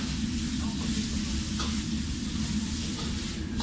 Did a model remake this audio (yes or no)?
no